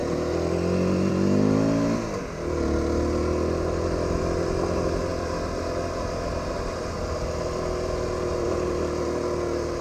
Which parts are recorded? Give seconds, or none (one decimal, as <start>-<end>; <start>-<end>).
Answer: 0.0-5.1; 6.5-9.8